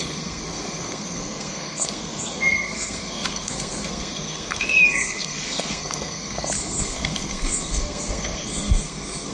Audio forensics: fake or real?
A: fake